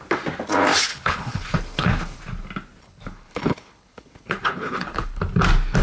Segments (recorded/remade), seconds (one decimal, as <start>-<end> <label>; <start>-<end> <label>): 0.0-0.9 recorded; 0.9-2.2 remade; 2.2-2.8 recorded; 2.8-5.2 remade; 5.2-5.8 recorded

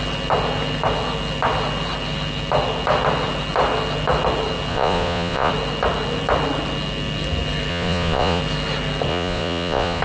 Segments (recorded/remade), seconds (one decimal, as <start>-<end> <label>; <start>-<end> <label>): 0.0-4.7 recorded; 4.7-5.5 remade; 5.5-7.7 recorded; 7.7-8.4 remade; 8.4-9.1 recorded; 9.1-10.0 remade

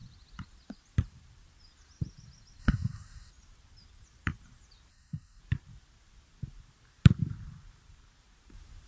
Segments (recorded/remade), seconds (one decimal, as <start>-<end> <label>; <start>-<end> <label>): 0.0-2.6 recorded; 2.6-3.3 remade; 3.3-4.9 recorded; 4.9-5.4 remade; 5.4-8.9 recorded

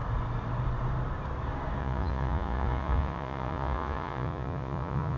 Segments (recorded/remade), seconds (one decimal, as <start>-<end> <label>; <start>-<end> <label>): 0.0-1.8 recorded; 1.8-5.2 remade

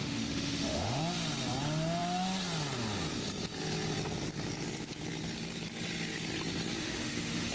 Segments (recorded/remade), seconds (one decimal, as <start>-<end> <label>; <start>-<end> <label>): 0.0-1.0 remade; 1.0-6.8 recorded; 6.8-7.5 remade

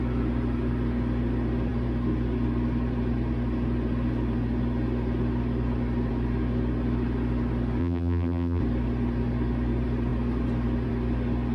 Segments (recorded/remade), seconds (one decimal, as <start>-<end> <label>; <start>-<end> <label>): 0.0-7.8 recorded; 7.8-8.6 remade; 8.6-11.5 recorded

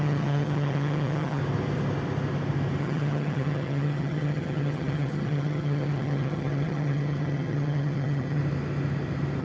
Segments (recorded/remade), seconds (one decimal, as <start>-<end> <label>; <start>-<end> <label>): 0.0-1.4 remade; 1.4-2.8 recorded; 2.8-8.4 remade; 8.4-9.4 recorded

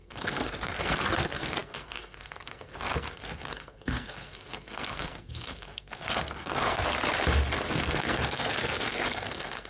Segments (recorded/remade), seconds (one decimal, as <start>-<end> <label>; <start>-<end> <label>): 0.0-6.8 remade; 6.8-7.7 recorded; 7.7-9.7 remade